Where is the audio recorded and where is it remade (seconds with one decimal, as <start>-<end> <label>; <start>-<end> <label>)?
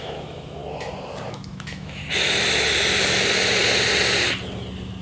0.0-0.6 remade; 0.6-1.3 recorded; 1.3-2.0 remade; 2.0-5.0 recorded